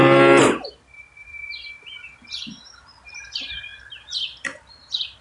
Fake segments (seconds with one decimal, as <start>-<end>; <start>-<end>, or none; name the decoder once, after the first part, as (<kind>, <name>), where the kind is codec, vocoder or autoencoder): none